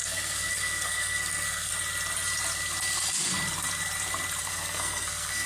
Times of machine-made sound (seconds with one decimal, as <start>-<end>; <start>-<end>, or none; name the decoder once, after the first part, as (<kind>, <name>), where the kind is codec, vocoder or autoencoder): 0.0-1.7 (codec, SNAC); 4.4-5.5